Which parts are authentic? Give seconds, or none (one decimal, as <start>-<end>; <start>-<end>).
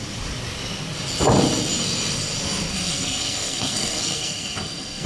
0.0-2.7